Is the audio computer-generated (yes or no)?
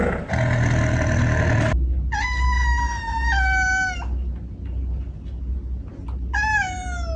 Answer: no